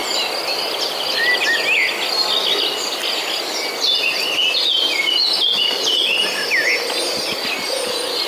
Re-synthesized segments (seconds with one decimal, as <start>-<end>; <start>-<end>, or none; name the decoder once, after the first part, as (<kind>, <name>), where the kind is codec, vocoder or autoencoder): none